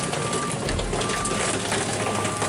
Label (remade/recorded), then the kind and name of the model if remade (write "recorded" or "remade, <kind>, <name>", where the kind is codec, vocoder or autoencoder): recorded